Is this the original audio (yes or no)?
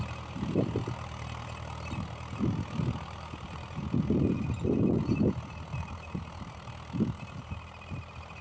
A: yes